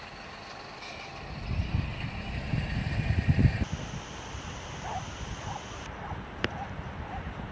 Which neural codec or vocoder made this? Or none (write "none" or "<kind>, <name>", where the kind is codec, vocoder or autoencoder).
none